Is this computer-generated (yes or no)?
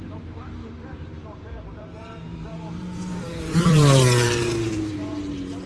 yes